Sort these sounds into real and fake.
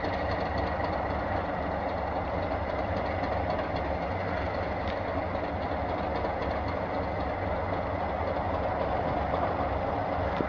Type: real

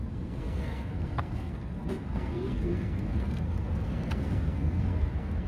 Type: fake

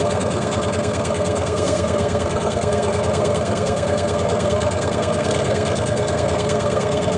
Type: fake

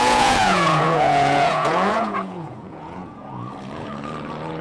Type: fake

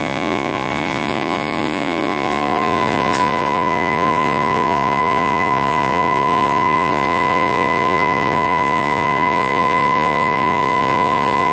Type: fake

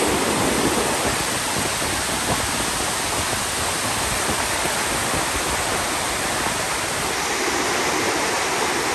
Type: real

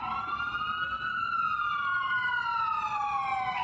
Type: real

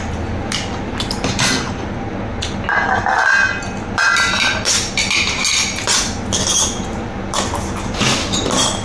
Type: real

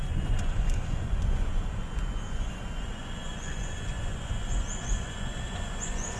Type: fake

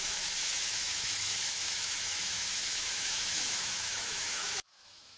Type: fake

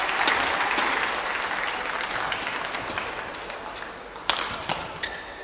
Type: real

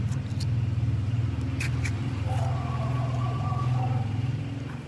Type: real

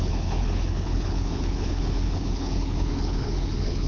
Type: fake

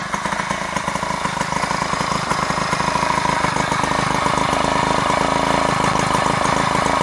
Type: real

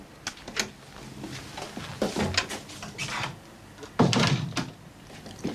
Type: real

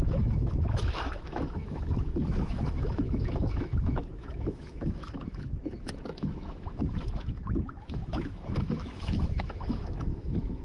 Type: fake